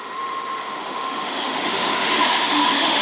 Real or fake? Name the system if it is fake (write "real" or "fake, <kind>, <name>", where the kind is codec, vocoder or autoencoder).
fake, autoencoder, DAC-VAE